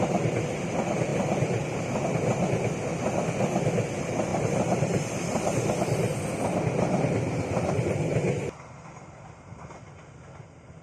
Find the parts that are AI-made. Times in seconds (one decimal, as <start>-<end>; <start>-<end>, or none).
4.3-5.7